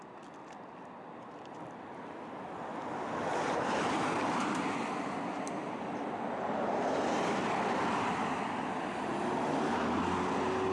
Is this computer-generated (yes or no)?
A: no